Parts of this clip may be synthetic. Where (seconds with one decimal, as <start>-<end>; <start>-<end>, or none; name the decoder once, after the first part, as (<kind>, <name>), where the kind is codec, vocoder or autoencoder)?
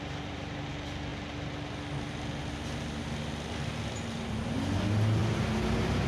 none